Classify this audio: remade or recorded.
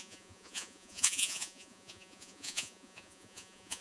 remade